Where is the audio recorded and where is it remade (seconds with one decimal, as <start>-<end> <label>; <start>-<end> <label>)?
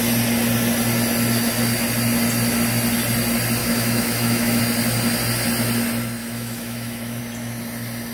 0.0-3.6 recorded; 3.6-4.6 remade; 4.6-6.2 recorded; 6.2-7.2 remade; 7.2-8.1 recorded